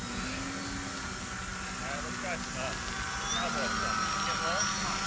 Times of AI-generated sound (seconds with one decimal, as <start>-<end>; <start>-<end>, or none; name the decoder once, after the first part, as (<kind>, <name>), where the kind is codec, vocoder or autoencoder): none